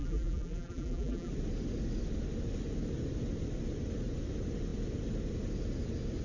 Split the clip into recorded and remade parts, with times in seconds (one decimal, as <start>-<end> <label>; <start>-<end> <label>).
0.0-1.3 remade; 1.3-6.2 recorded